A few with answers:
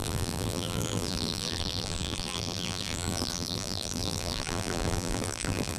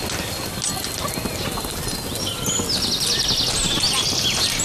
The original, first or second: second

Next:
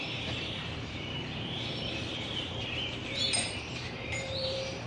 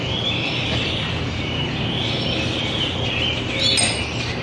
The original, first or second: second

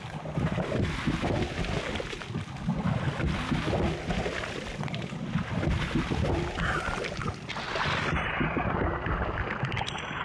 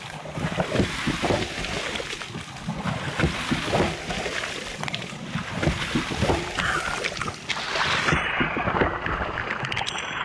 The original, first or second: first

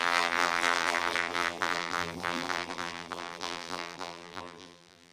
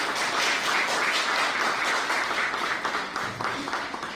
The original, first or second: second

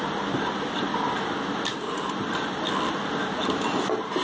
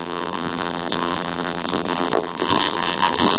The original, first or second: first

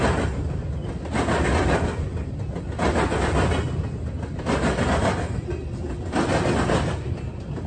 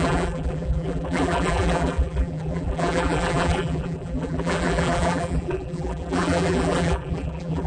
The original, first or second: first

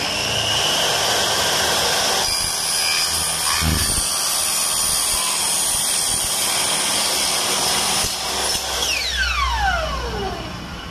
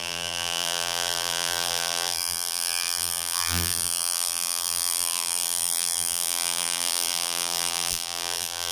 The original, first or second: first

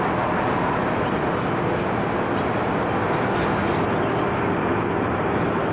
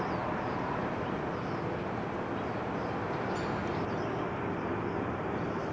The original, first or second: first